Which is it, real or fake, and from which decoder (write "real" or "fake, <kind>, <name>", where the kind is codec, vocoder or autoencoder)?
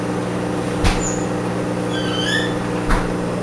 real